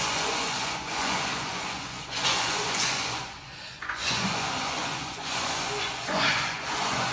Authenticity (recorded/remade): remade